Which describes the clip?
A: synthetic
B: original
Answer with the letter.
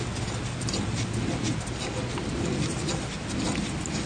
B